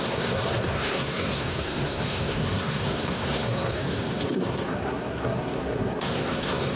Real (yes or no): no